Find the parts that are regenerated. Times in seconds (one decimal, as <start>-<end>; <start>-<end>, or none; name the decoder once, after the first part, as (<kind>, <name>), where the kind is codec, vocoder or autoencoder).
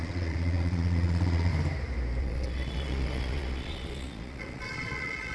0.0-1.5 (vocoder, Vocos); 2.2-5.3